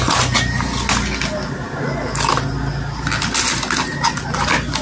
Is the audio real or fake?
real